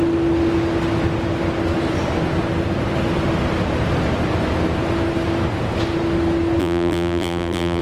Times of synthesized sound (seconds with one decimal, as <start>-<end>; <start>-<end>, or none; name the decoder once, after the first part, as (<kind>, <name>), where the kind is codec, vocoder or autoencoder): 6.6-7.8 (vocoder, BigVGAN v2)